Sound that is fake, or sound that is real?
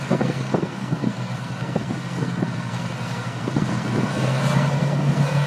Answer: fake